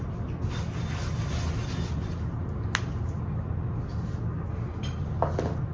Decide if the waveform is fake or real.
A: real